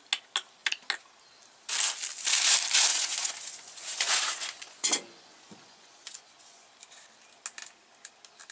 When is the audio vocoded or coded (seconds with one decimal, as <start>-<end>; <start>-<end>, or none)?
2.9-6.7